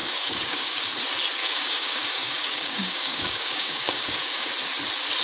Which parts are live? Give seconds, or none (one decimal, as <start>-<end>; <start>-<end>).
0.9-1.4; 4.5-5.2